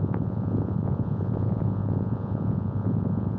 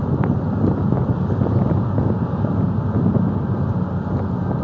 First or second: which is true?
second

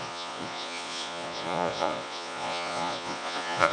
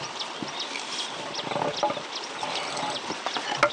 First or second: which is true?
second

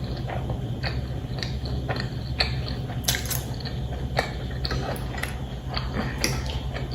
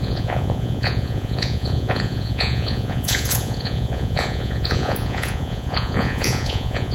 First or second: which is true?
first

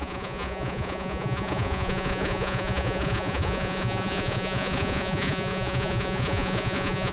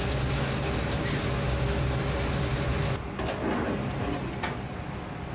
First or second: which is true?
second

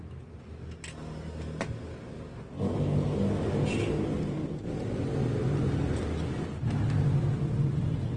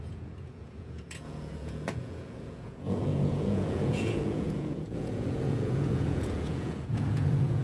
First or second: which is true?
first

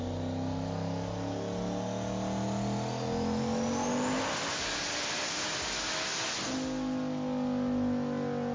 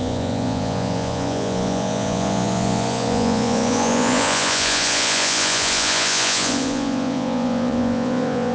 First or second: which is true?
first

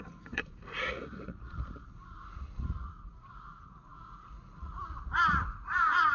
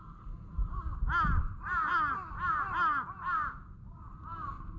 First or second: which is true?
second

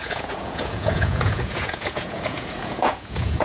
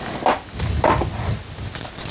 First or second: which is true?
second